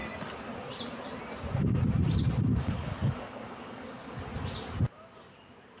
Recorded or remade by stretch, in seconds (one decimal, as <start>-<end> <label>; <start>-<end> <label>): 0.0-2.5 recorded; 2.5-4.2 remade; 4.2-5.8 recorded